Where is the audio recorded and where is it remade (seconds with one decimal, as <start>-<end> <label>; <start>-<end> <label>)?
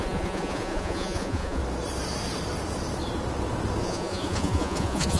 0.0-1.6 remade; 1.6-3.8 recorded; 3.8-5.2 remade